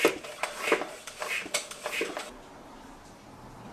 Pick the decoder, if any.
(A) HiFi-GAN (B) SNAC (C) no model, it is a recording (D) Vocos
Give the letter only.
C